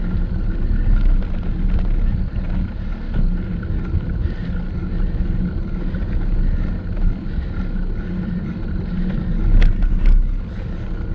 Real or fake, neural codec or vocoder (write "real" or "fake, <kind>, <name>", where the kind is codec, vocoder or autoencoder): real